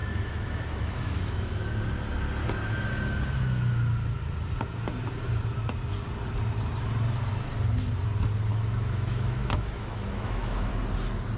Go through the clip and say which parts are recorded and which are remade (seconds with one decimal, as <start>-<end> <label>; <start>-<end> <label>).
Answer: 0.0-1.6 remade; 1.6-8.5 recorded; 8.5-10.7 remade; 10.7-11.4 recorded